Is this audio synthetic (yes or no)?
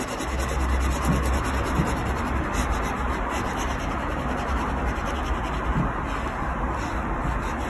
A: no